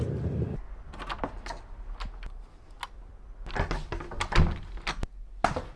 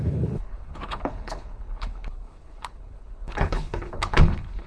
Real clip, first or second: first